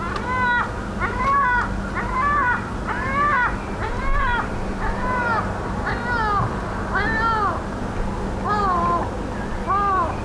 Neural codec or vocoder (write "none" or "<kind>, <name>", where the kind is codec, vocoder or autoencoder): none